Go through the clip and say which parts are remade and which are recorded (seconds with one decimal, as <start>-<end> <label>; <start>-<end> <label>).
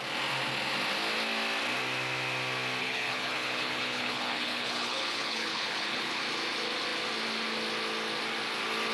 0.0-2.8 recorded; 2.8-6.2 remade; 6.2-8.9 recorded